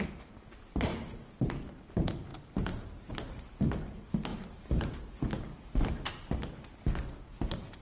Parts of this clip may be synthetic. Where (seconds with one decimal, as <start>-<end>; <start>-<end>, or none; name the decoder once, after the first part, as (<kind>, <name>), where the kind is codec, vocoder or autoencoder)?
2.3-3.1 (vocoder, BigVGAN v2); 4.3-4.9